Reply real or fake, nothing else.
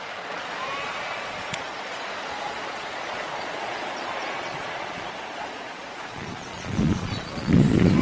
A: fake